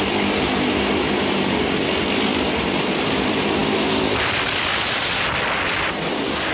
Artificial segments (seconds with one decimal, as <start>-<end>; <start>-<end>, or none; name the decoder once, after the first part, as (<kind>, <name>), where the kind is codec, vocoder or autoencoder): none